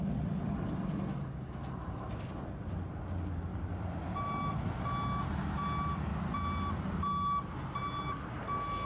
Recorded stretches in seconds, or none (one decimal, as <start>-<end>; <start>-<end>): 0.0-1.6; 3.0-3.5; 4.8-6.1; 6.8-8.9